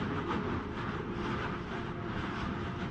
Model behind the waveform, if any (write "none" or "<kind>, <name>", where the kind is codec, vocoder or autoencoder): none